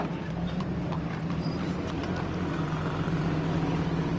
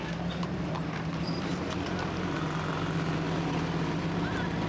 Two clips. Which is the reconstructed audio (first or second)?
first